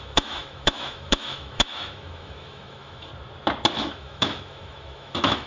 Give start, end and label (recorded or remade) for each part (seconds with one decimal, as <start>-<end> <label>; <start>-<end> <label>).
0.0-3.1 remade; 3.1-3.8 recorded; 3.8-5.5 remade